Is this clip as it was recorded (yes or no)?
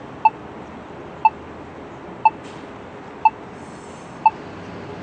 yes